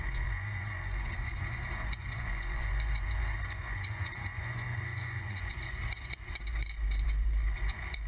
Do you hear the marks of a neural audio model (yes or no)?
yes